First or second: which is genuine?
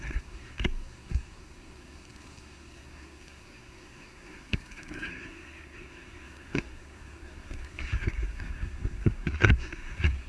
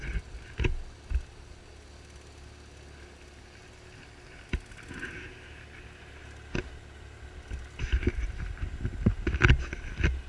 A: second